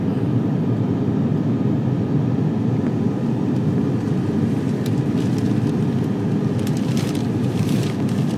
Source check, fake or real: real